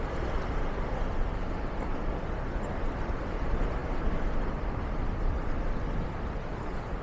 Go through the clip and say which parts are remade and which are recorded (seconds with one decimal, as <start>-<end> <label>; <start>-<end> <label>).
0.0-7.0 recorded